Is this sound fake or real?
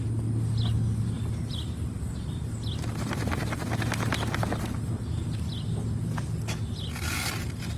real